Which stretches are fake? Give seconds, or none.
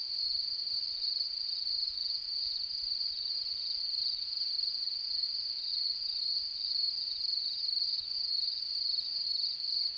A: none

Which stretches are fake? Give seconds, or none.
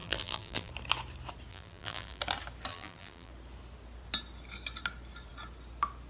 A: 0.0-0.7 (vocoder, BigVGAN v2); 1.5-2.2; 2.7-3.3